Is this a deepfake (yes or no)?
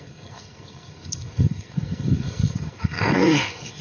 yes